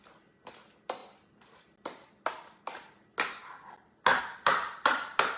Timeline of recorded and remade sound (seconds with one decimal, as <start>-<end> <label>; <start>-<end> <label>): 0.0-5.4 recorded